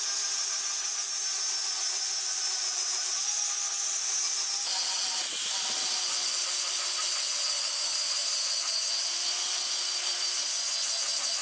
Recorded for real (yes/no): yes